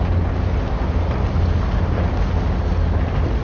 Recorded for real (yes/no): yes